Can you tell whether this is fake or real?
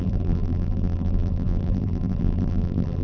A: fake